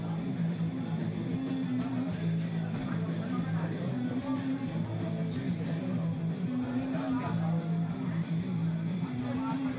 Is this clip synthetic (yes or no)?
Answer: no